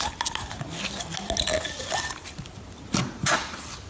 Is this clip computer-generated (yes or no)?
no